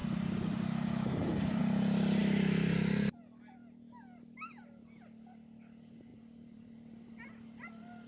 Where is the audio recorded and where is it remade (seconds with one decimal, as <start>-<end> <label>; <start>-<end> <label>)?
0.0-1.6 remade; 1.6-6.1 recorded; 6.1-8.1 remade